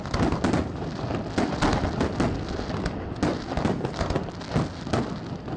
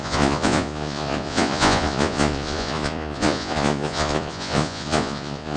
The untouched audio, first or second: first